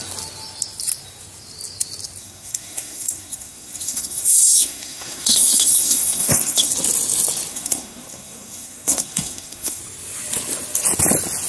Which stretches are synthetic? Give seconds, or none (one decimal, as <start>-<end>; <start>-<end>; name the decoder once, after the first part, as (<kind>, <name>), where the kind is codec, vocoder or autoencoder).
2.2-6.7 (codec, SNAC); 7.5-9.8